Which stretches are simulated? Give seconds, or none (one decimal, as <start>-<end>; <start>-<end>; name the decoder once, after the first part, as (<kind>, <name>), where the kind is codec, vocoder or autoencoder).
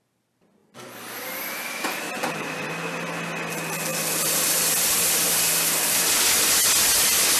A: 0.6-2.7 (vocoder, BigVGAN v2)